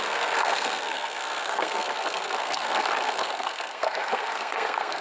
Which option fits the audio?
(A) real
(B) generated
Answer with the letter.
B